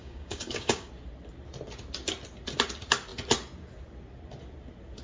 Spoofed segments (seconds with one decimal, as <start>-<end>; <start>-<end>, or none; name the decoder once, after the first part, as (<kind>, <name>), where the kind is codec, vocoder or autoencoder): 0.0-0.9 (codec, DAC)